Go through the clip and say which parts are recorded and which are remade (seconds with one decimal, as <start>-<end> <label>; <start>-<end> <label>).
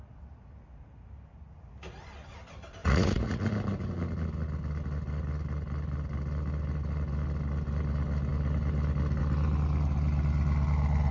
0.0-2.8 recorded; 2.8-3.5 remade; 3.5-11.1 recorded